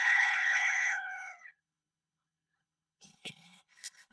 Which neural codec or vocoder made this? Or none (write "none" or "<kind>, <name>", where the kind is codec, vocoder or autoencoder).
codec, HILCodec